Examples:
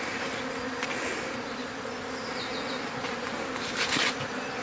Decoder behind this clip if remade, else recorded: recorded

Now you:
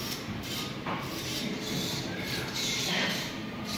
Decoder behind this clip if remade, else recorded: remade, vocoder, BigVGAN v2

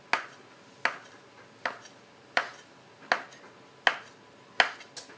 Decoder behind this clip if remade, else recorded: recorded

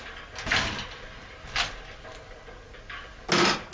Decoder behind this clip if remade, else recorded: recorded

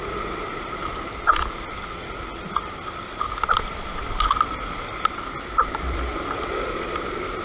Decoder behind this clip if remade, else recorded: remade, vocoder, BigVGAN v2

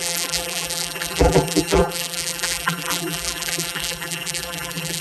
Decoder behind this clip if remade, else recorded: remade, vocoder, BigVGAN v2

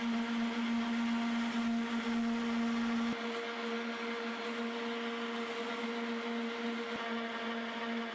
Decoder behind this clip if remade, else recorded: recorded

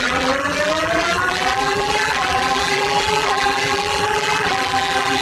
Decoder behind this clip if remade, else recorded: remade, vocoder, BigVGAN v2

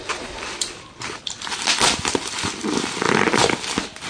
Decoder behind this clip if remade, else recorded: remade, vocoder, BigVGAN v2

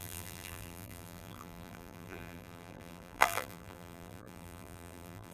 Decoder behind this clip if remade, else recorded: remade, vocoder, BigVGAN v2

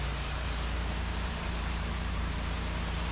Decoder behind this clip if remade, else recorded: remade, vocoder, BigVGAN v2